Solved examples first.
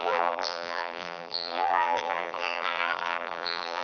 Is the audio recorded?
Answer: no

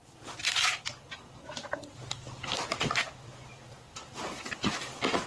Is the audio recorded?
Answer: yes